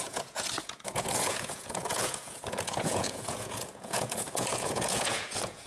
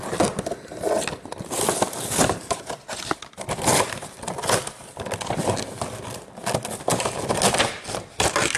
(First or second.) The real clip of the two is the second